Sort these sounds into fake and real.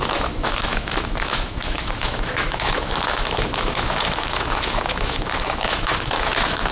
fake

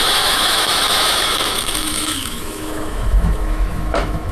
fake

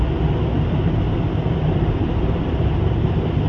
real